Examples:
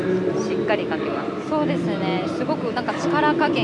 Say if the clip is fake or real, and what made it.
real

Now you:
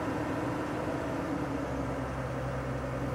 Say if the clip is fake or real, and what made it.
real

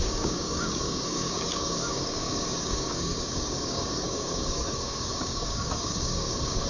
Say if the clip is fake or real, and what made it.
fake, codec, DAC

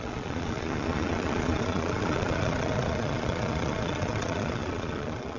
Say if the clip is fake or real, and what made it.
fake, vocoder, Vocos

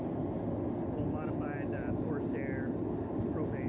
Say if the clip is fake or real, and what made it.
real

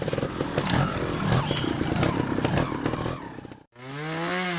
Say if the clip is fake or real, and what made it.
real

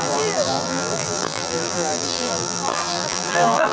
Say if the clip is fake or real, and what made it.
fake, vocoder, BigVGAN v2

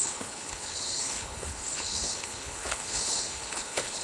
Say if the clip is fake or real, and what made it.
fake, codec, HILCodec